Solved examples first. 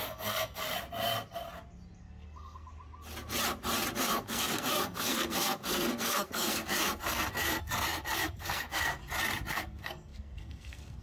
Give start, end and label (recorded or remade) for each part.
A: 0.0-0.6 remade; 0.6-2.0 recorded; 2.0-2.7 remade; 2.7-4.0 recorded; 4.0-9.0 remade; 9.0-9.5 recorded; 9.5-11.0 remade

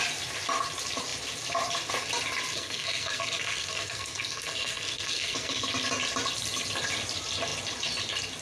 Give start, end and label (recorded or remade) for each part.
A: 0.0-2.5 recorded; 2.5-5.7 remade; 5.7-8.4 recorded

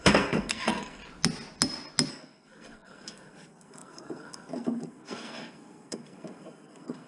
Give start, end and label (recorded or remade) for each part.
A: 0.0-1.0 remade; 1.0-2.1 recorded; 2.1-7.1 remade